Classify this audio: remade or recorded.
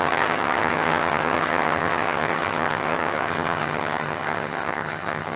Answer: remade